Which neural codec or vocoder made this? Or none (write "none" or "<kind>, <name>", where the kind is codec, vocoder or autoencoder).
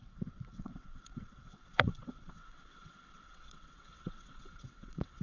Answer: vocoder, WaveNeXt